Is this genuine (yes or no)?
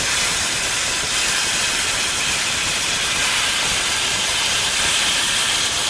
no